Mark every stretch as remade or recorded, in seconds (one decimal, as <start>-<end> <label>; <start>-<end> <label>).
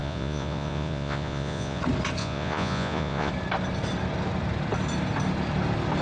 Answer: 0.0-1.8 remade; 1.8-2.2 recorded; 2.2-3.3 remade; 3.3-6.0 recorded